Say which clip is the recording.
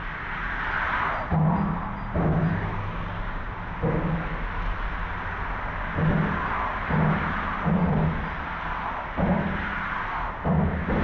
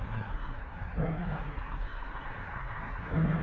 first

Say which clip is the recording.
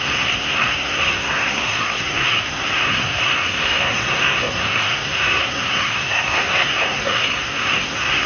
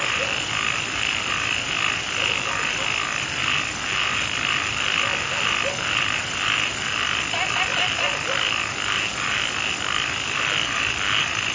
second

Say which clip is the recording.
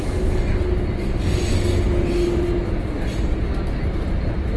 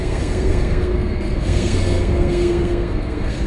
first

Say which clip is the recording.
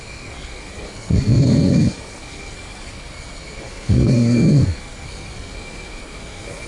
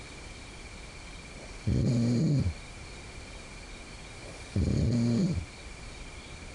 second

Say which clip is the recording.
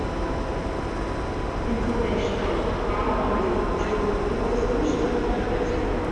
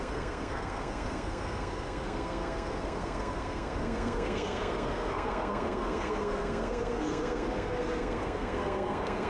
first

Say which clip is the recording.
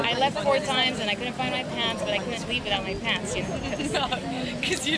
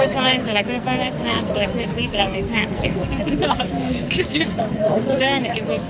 first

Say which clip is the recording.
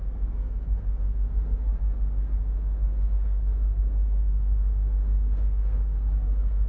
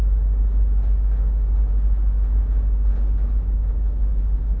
second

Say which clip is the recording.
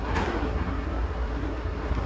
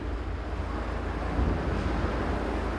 second